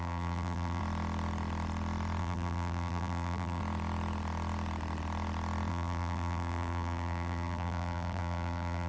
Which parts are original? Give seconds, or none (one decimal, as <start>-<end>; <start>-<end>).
0.8-2.2; 3.6-5.7